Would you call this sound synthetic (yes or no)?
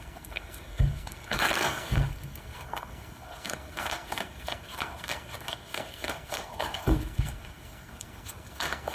yes